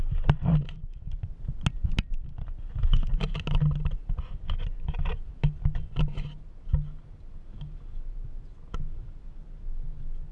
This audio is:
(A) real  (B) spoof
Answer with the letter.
A